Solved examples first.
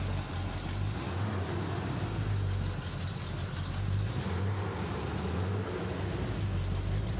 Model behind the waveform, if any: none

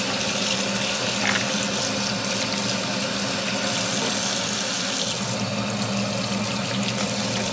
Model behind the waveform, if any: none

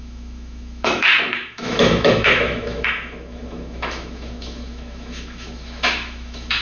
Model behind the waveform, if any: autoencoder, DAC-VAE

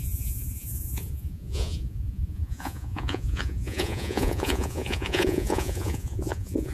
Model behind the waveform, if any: vocoder, Vocos